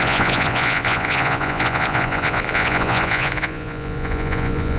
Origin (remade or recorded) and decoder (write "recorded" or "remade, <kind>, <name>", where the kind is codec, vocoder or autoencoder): remade, vocoder, Vocos